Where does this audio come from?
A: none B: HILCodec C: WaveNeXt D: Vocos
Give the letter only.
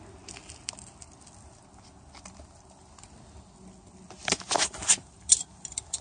A